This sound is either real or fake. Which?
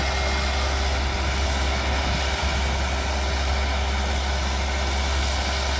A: real